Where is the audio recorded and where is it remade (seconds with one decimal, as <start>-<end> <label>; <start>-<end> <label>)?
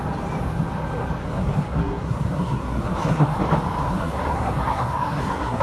0.0-1.2 recorded; 1.2-3.4 remade; 3.4-3.8 recorded; 3.8-5.6 remade